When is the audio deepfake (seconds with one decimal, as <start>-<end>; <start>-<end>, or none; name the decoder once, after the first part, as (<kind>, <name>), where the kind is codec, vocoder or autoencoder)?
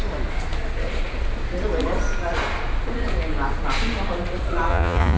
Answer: 4.7-5.2 (vocoder, Vocos)